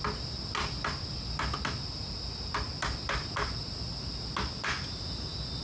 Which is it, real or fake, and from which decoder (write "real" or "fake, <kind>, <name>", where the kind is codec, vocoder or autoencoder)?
real